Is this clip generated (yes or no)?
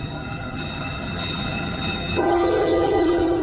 yes